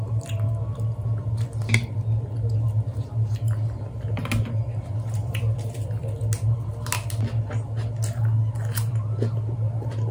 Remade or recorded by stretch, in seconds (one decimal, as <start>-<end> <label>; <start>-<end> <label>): 0.0-4.7 recorded; 4.7-5.4 remade; 5.4-10.1 recorded